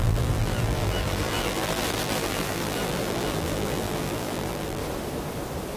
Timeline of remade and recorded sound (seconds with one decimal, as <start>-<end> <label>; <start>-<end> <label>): 0.0-4.8 remade; 4.8-5.8 recorded